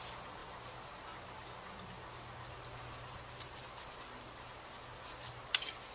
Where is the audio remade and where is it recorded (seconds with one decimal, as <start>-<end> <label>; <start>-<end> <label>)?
0.0-5.9 recorded